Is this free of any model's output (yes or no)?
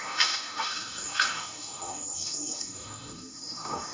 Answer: no